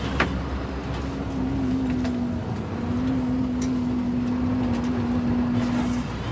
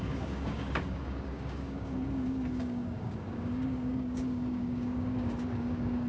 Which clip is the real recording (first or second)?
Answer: first